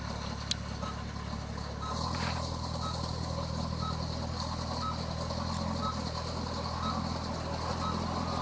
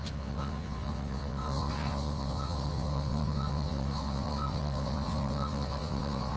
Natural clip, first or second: first